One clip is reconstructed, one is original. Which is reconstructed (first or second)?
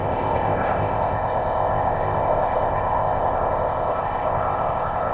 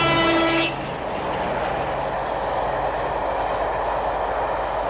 first